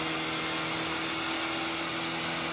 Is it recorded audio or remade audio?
recorded